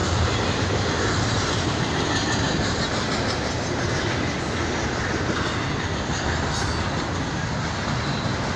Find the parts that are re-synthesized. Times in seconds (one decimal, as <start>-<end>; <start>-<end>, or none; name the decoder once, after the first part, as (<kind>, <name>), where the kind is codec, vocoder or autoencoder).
0.0-0.7 (vocoder, BigVGAN v2)